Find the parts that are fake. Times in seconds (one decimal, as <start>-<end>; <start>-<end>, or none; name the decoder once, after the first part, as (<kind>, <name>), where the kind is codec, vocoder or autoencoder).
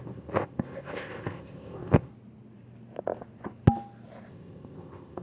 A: 0.0-2.1 (codec, ZipCodec); 4.3-5.2